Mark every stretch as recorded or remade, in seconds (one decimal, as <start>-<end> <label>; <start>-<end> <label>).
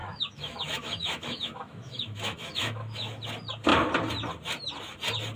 0.0-3.2 remade; 3.2-5.4 recorded